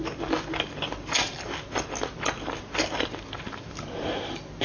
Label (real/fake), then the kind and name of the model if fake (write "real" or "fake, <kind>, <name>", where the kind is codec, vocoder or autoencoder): real